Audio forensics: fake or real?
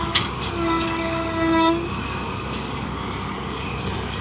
fake